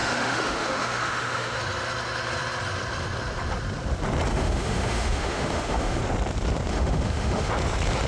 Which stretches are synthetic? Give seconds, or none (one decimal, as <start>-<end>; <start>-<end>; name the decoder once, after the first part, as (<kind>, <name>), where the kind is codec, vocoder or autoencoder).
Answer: 0.0-1.6 (autoencoder, DAC-VAE); 4.3-6.0; 6.7-7.5

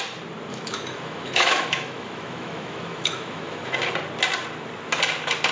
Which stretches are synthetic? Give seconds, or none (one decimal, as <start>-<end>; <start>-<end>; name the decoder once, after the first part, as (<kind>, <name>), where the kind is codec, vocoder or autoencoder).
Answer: 0.5-3.8 (autoencoder, DAC-VAE)

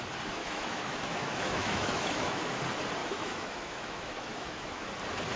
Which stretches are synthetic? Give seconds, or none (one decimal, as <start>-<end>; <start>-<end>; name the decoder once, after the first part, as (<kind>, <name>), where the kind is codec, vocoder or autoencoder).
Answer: 0.4-2.6 (autoencoder, DAC-VAE); 3.0-4.9